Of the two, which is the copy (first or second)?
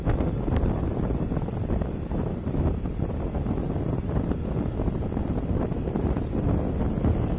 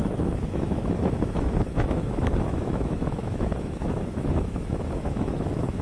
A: second